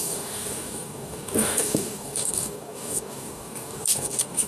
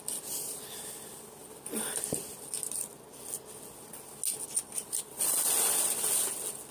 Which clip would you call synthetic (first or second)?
first